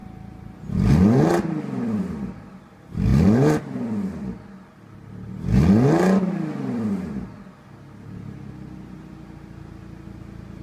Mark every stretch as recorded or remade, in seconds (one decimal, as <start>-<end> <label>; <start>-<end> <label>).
0.0-10.6 recorded

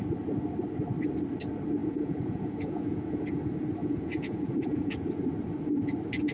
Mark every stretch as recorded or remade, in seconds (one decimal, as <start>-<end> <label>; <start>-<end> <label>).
0.0-1.8 recorded; 1.8-3.4 remade; 3.4-3.8 recorded; 3.8-5.1 remade; 5.1-6.3 recorded

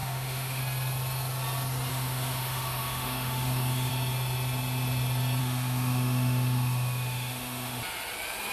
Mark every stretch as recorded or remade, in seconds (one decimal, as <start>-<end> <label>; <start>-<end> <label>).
0.0-0.6 remade; 0.6-1.9 recorded; 1.9-3.9 remade; 3.9-5.4 recorded; 5.4-7.8 remade; 7.8-8.5 recorded

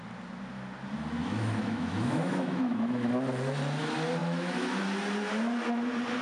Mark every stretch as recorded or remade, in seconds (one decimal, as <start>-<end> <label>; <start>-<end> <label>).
0.0-1.2 recorded; 1.2-3.1 remade; 3.1-4.2 recorded; 4.2-4.8 remade; 4.8-6.2 recorded

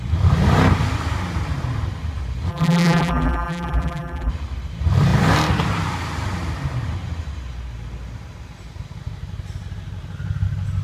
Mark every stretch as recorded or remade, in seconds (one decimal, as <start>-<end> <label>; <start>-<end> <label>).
0.0-2.5 recorded; 2.5-4.3 remade; 4.3-10.8 recorded

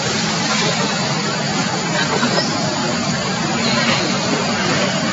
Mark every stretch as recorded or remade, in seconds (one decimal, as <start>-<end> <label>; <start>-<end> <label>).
0.0-5.1 recorded

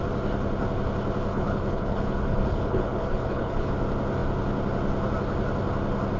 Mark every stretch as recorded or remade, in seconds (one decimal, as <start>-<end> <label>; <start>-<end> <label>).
0.0-1.3 recorded; 1.3-3.7 remade; 3.7-6.2 recorded